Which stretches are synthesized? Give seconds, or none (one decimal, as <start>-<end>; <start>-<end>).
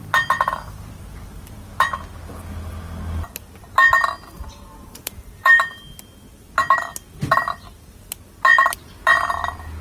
4.8-5.7